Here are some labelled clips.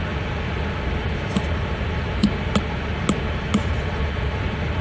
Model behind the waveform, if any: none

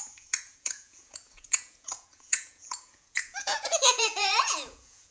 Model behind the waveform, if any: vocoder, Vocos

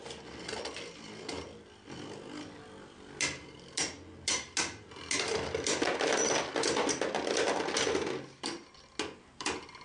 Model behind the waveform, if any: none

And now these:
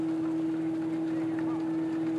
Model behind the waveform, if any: none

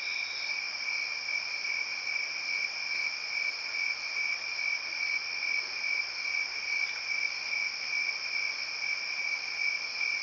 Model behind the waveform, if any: none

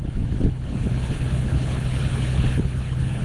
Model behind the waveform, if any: codec, HILCodec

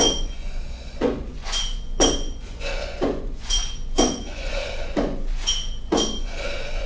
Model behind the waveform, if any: vocoder, Vocos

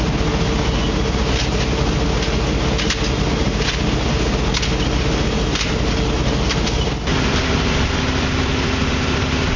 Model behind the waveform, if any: none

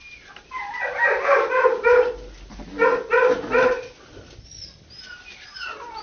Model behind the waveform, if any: none